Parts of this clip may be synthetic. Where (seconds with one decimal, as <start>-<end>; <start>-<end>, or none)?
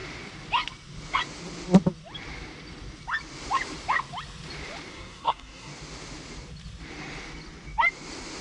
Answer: 4.9-5.7